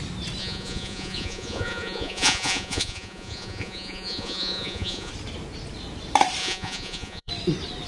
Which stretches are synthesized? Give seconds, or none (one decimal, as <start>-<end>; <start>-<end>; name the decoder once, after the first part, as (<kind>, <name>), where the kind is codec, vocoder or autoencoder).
0.4-5.1 (vocoder, Vocos); 6.4-7.3